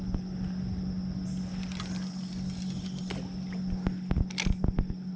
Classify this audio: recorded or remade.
recorded